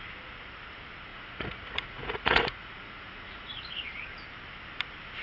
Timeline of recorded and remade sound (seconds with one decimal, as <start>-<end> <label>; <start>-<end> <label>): 0.0-1.1 recorded; 1.1-3.6 remade; 3.6-5.2 recorded